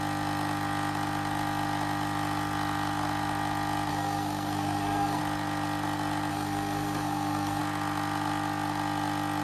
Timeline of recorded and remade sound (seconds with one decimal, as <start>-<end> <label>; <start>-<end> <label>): 0.0-3.9 recorded; 3.9-5.2 remade; 5.2-6.3 recorded; 6.3-7.6 remade; 7.6-9.4 recorded